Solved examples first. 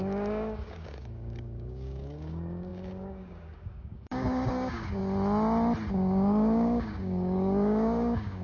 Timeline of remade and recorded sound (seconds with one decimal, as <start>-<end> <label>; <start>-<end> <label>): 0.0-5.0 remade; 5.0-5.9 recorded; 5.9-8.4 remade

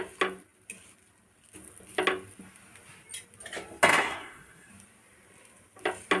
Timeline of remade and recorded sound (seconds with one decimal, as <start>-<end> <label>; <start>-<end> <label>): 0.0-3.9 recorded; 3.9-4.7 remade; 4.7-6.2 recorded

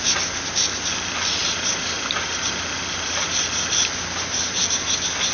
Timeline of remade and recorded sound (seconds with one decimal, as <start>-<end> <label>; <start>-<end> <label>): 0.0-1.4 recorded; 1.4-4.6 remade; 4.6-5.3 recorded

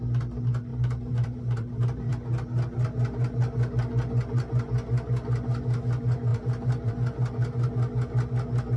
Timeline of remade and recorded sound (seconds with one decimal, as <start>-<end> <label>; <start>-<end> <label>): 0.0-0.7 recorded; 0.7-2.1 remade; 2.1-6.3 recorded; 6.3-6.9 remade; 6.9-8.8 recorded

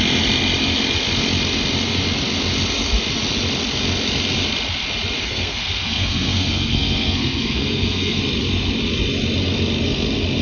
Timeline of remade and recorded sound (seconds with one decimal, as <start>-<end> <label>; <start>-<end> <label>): 0.0-5.2 recorded; 5.2-8.2 remade; 8.2-10.4 recorded